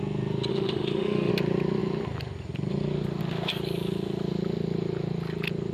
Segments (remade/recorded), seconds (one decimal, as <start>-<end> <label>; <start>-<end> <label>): 0.0-0.5 recorded; 0.5-1.3 remade; 1.3-5.7 recorded